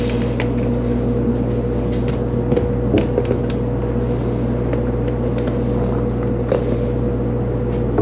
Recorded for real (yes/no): yes